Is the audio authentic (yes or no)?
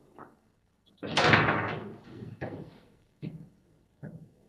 no